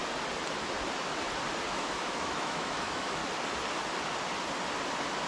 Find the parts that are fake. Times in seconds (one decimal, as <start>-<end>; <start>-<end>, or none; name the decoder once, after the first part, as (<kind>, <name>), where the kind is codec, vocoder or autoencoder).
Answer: 1.7-3.2 (autoencoder, DAC-VAE)